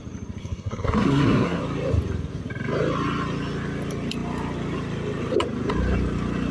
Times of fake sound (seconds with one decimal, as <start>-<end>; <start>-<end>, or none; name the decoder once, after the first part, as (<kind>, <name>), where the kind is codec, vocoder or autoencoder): 0.4-1.6 (codec, SNAC)